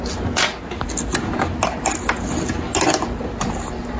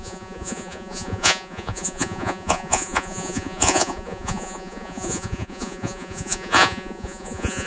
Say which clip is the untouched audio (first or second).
first